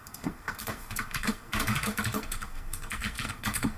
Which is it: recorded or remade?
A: remade